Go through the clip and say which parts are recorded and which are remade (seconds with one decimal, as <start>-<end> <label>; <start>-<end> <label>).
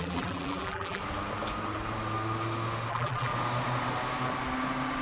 0.0-1.0 remade; 1.0-2.9 recorded; 2.9-3.3 remade; 3.3-5.0 recorded